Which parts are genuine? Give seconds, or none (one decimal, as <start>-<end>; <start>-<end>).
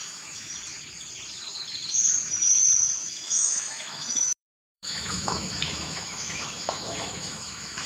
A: 0.5-3.0